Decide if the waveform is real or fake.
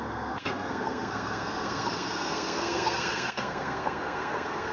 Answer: fake